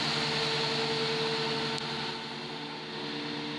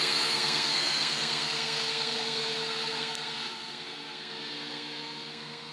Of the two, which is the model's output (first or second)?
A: second